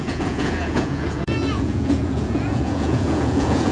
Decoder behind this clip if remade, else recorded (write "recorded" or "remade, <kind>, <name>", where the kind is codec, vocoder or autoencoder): remade, vocoder, Vocos